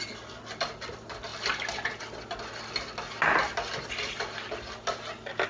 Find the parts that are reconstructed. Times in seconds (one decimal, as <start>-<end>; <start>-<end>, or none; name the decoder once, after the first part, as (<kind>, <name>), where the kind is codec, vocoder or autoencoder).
none